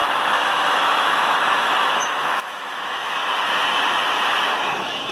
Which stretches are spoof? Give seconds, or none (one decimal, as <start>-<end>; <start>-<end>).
0.0-3.2; 4.4-5.1